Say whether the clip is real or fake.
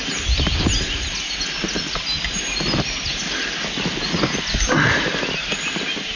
real